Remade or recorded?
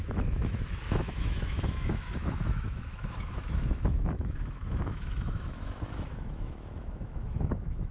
remade